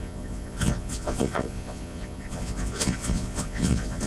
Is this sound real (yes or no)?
no